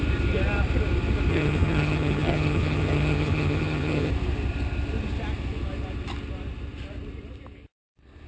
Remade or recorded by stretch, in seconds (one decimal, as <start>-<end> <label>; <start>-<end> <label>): 0.0-1.3 recorded; 1.3-4.1 remade; 4.1-8.3 recorded